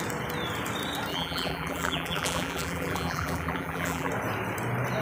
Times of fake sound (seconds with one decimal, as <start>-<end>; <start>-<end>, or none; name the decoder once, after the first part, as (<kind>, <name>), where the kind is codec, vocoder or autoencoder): 1.1-4.1 (vocoder, BigVGAN v2)